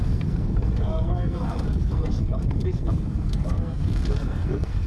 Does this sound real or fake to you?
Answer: fake